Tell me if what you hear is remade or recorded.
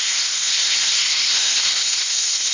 remade